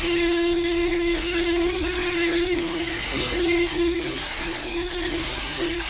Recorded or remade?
remade